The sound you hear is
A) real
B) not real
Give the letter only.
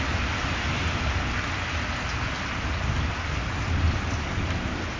A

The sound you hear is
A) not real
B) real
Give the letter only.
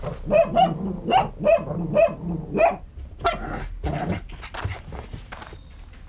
B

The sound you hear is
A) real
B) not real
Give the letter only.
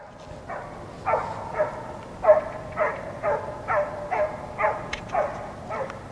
A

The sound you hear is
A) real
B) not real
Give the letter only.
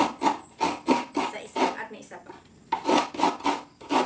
A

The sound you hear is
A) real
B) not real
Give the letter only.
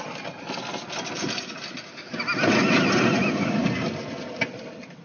A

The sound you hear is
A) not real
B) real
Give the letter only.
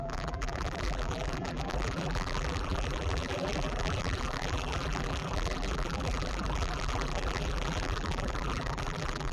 A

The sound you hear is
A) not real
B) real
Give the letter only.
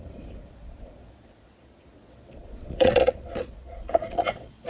A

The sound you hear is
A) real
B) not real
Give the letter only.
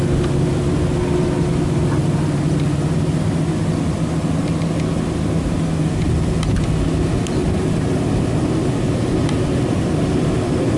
A